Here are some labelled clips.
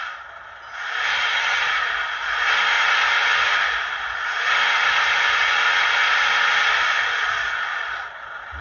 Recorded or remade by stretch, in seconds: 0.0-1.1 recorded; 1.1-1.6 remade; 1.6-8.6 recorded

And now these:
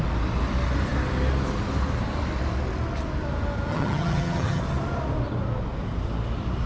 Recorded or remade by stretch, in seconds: 0.0-3.7 recorded; 3.7-4.6 remade; 4.6-6.7 recorded

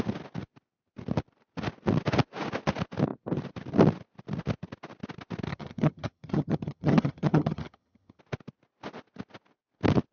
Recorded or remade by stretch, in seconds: 0.0-5.5 recorded; 5.5-8.2 remade; 8.2-10.1 recorded

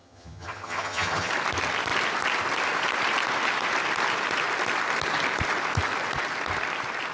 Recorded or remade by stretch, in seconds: 0.0-1.3 remade; 1.3-7.1 recorded

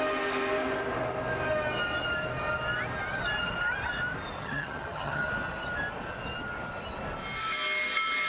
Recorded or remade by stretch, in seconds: 0.0-4.4 recorded; 4.4-5.3 remade; 5.3-8.3 recorded